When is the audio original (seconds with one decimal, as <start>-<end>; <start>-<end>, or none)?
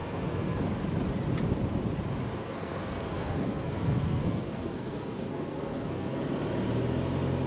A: 0.6-2.4; 6.2-7.5